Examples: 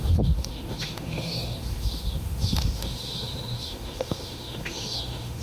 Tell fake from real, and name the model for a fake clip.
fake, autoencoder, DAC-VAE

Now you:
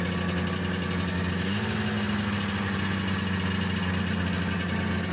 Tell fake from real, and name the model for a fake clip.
real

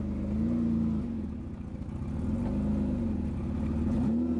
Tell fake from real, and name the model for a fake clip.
real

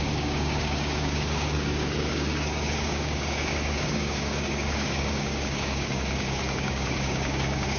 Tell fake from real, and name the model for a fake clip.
fake, codec, DAC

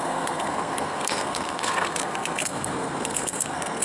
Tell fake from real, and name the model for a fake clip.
fake, codec, SNAC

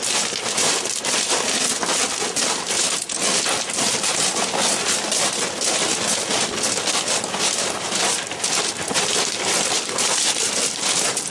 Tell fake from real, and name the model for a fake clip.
real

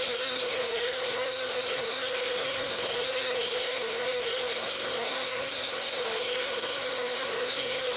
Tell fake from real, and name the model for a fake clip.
fake, codec, SNAC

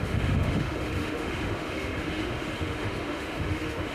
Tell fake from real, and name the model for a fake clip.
fake, autoencoder, DAC-VAE